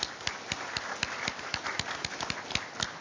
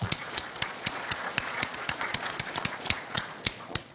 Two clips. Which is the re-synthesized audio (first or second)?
second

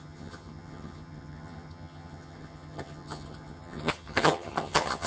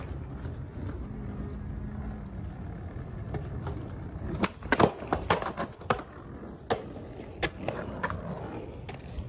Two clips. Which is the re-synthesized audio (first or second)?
first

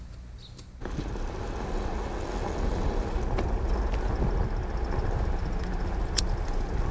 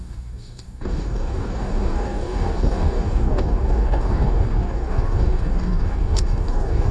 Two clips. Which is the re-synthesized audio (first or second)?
second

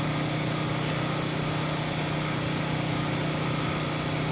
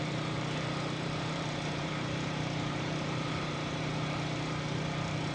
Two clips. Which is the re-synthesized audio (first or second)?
second